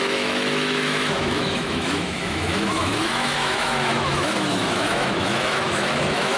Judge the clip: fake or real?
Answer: fake